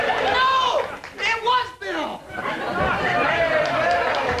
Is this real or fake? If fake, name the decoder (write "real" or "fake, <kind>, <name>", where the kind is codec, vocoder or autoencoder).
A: real